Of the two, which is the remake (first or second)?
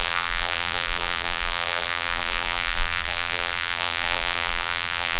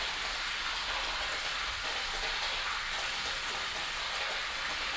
first